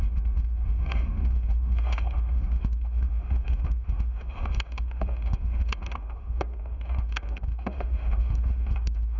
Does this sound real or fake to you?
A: fake